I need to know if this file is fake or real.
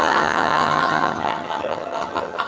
fake